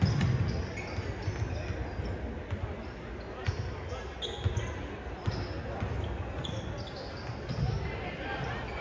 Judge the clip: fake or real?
real